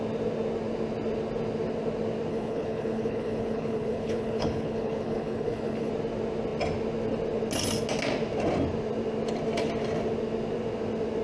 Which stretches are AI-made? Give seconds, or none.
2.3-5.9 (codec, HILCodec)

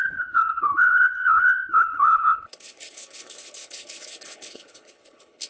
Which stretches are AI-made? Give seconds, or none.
0.0-5.5 (codec, HILCodec)

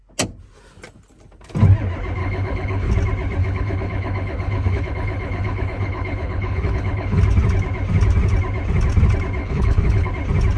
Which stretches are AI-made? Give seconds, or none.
2.2-2.9 (codec, HILCodec); 3.4-7.2; 9.4-10.1

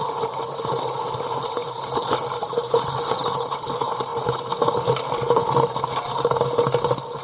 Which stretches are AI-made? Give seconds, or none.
none